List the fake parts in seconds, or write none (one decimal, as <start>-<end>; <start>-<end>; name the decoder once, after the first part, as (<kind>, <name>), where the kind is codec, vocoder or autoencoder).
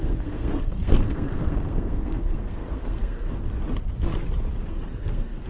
0.0-3.3 (codec, SNAC); 4.7-5.5